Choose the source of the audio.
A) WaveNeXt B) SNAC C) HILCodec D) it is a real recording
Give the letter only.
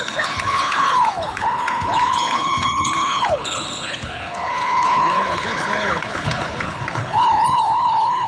C